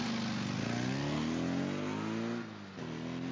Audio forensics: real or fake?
real